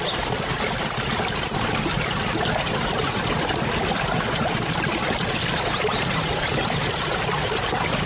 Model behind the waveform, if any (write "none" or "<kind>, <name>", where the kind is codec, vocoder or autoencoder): none